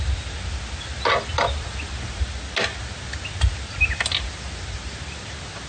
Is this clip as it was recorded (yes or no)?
yes